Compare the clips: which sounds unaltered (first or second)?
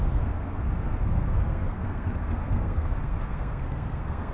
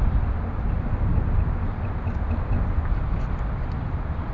second